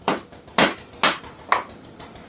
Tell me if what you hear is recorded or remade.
recorded